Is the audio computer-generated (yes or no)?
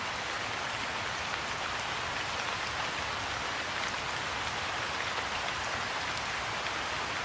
no